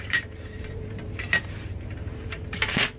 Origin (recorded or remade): remade